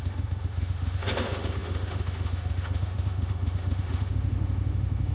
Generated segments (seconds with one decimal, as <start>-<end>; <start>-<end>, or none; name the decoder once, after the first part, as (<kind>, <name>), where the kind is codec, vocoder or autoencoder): 0.0-5.1 (autoencoder, DAC-VAE)